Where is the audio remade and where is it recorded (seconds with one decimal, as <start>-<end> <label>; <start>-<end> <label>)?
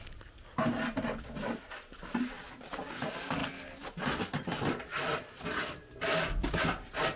0.0-7.2 recorded